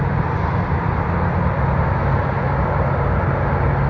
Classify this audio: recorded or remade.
recorded